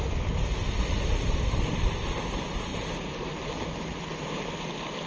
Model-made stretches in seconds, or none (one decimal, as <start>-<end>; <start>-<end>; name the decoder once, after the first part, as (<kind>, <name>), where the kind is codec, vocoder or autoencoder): 2.7-3.3 (vocoder, BigVGAN v2)